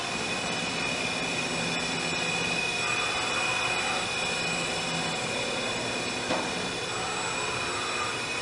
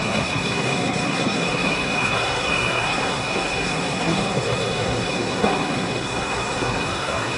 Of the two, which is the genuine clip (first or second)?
first